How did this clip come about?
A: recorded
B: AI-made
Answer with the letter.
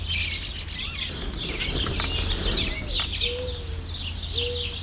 A